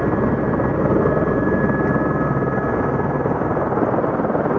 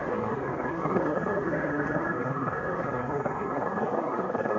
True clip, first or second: first